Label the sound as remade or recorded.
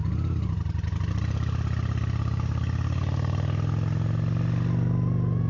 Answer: recorded